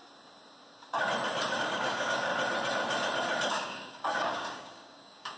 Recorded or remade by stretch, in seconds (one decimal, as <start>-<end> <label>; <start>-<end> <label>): 0.0-1.6 recorded; 1.6-2.3 remade; 2.3-3.5 recorded; 3.5-5.4 remade